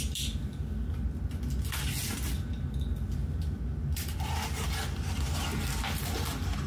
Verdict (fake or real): real